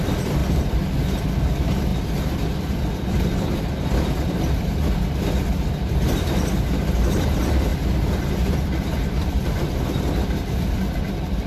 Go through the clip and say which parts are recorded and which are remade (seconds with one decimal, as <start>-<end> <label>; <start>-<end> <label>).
0.0-0.4 recorded; 0.4-1.2 remade; 1.2-1.9 recorded; 1.9-3.7 remade; 3.7-7.7 recorded; 7.7-10.2 remade; 10.2-11.5 recorded